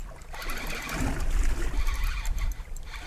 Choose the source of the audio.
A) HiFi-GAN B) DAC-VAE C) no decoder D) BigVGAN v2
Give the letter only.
C